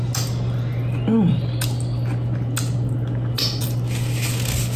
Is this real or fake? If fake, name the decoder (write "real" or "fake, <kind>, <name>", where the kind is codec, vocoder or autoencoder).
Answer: real